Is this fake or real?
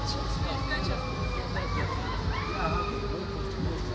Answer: real